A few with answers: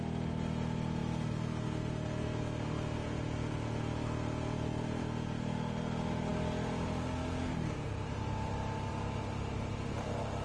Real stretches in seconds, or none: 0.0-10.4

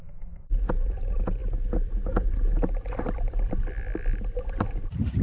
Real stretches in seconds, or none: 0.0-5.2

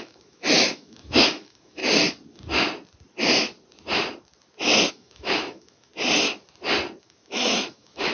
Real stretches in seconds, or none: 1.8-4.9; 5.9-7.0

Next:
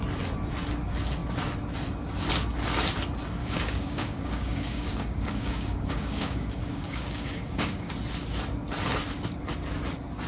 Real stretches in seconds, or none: 0.0-3.4; 7.9-10.3

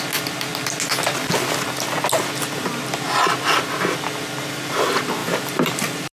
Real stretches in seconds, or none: 0.0-5.2

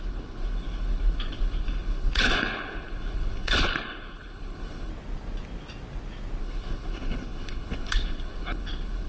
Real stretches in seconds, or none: 4.9-6.4

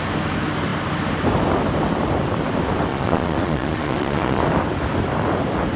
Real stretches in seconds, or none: 0.0-2.9; 4.4-5.8